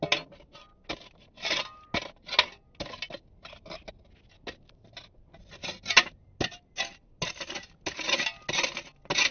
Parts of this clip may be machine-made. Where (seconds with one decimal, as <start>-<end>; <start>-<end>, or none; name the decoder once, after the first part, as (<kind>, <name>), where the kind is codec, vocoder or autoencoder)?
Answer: none